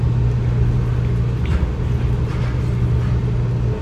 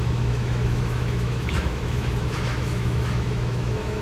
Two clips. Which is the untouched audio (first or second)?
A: first